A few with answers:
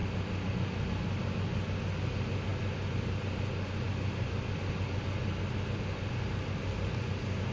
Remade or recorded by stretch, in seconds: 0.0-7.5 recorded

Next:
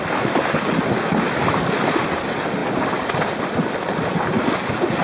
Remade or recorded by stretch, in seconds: 0.0-5.0 recorded